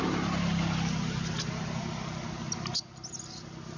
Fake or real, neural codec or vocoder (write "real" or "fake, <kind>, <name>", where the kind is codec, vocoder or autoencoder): real